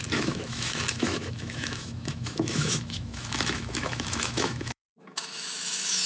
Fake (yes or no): yes